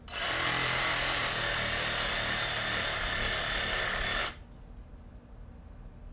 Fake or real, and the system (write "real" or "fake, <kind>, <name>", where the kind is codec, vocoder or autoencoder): real